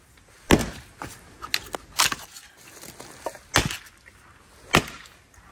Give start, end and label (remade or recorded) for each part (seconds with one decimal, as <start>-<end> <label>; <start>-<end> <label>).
0.0-5.5 recorded